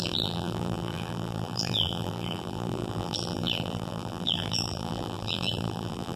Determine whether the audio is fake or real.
fake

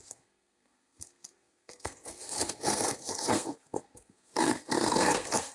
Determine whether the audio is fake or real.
fake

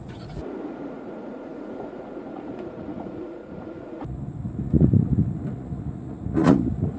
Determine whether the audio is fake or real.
fake